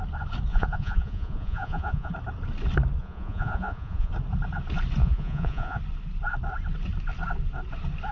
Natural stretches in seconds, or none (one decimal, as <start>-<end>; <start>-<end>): 0.0-0.5; 2.1-3.0; 4.1-5.0; 5.8-8.1